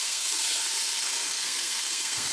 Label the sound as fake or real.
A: fake